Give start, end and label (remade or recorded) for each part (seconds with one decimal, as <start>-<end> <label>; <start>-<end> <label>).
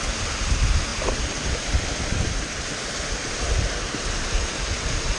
0.0-0.9 recorded; 0.9-2.7 remade; 2.7-5.2 recorded